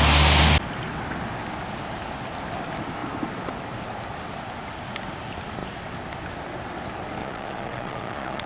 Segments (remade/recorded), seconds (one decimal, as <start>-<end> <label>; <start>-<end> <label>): 0.0-7.2 recorded; 7.2-8.5 remade